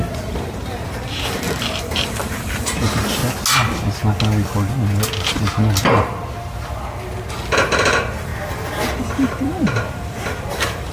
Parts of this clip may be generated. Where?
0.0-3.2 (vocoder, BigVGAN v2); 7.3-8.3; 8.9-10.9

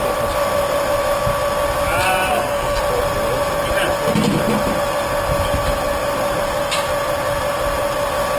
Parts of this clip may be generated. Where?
2.3-2.8 (codec, SNAC)

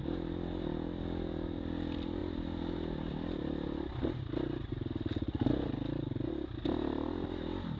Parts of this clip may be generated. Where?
none

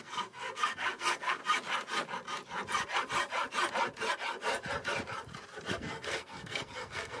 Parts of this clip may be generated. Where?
0.0-1.4 (codec, SNAC); 5.7-7.2

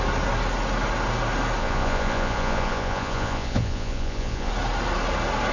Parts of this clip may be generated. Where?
1.6-4.5 (vocoder, Vocos)

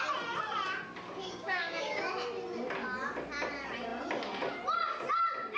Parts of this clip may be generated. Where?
1.2-2.0 (codec, DAC)